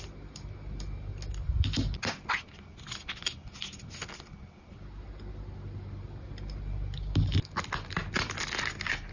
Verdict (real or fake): real